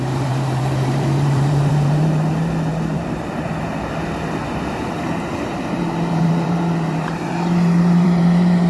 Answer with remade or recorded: remade